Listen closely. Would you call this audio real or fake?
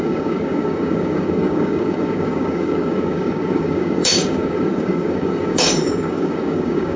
fake